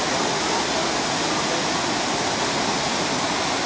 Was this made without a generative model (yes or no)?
yes